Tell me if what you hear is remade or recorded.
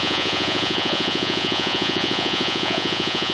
remade